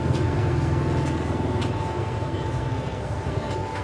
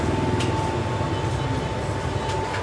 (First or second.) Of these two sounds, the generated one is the first